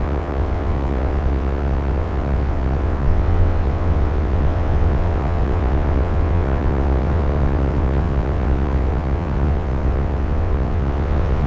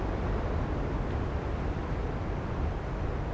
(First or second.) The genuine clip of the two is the second